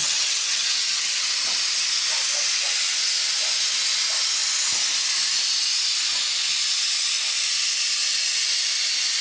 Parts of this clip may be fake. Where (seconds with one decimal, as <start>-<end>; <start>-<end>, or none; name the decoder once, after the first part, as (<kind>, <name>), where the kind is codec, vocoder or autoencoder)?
0.0-1.3 (vocoder, HiFi-GAN)